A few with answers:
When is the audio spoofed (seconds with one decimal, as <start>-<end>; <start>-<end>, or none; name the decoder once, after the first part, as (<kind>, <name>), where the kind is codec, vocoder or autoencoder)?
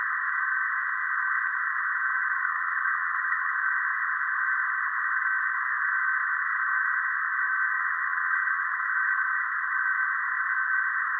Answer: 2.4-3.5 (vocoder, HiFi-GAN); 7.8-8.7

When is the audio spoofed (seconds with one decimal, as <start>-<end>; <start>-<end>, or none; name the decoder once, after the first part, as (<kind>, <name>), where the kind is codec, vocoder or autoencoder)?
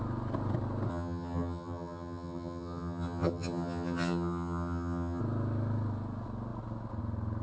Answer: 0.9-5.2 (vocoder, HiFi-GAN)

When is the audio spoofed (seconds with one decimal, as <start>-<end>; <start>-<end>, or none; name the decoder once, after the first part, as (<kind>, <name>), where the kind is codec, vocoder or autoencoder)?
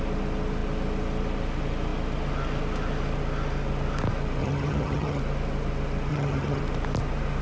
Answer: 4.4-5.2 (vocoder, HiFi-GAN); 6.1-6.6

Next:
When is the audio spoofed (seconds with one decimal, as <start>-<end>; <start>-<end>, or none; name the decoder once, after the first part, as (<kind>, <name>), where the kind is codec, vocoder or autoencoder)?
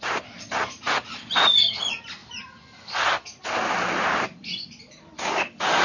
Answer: none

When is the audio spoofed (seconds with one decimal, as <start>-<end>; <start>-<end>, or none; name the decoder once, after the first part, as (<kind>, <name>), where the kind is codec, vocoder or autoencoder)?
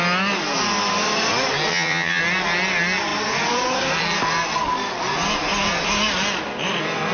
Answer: 1.7-2.2 (vocoder, HiFi-GAN)